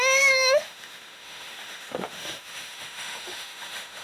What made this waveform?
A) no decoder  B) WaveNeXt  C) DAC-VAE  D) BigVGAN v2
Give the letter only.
C